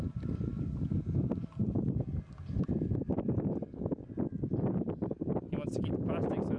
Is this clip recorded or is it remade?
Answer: recorded